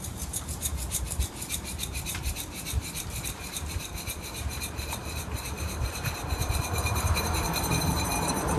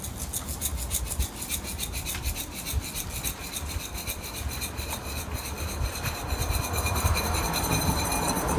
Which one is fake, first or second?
first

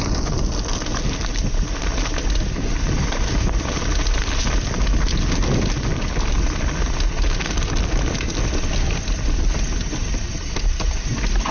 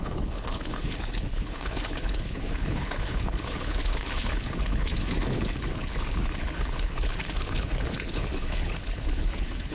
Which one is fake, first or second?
second